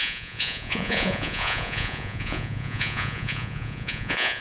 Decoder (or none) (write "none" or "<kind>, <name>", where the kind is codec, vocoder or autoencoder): vocoder, Vocos